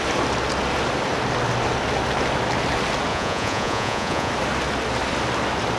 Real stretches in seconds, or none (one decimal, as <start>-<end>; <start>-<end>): 0.0-3.1; 4.3-5.8